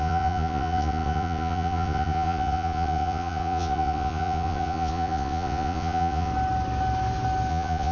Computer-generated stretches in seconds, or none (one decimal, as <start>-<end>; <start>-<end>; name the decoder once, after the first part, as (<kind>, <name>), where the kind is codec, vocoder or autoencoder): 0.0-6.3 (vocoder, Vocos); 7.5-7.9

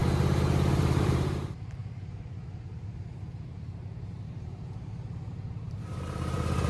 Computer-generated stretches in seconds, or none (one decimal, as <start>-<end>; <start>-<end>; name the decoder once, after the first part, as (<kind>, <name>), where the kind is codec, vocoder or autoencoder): 0.7-6.7 (vocoder, BigVGAN v2)

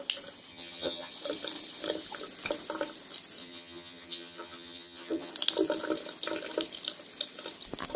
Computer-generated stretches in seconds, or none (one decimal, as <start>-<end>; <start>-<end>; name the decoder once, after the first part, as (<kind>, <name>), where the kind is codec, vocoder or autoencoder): 0.5-1.1 (vocoder, HiFi-GAN); 3.4-5.3

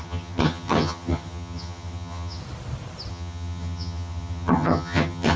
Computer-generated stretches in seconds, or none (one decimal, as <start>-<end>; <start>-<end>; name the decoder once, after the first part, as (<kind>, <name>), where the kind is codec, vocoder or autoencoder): 0.0-2.4 (vocoder, HiFi-GAN); 3.1-5.4